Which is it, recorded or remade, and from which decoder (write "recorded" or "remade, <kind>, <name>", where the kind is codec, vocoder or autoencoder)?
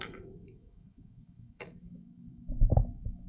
remade, autoencoder, DAC-VAE